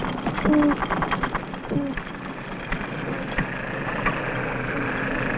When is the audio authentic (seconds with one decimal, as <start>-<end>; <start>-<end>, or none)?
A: 0.0-5.4